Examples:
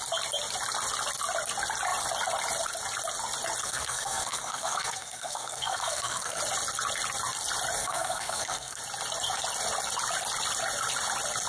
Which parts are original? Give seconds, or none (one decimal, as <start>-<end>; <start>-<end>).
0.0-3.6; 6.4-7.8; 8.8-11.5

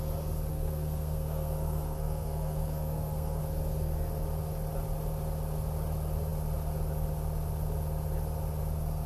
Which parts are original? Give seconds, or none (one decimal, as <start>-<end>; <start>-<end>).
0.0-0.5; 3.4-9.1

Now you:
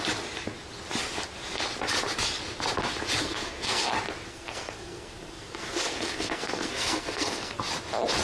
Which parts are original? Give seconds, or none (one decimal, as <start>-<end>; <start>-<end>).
0.0-3.2; 3.9-4.3; 7.6-8.2

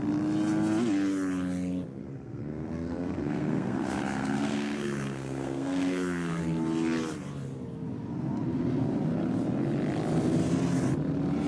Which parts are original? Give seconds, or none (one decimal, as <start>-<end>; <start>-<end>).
0.0-2.0; 6.4-11.5

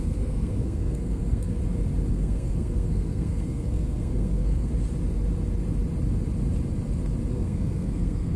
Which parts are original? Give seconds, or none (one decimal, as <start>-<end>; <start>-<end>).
1.6-2.1; 4.7-7.3

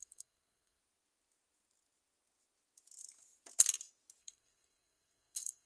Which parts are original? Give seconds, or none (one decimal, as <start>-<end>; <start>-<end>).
0.8-4.2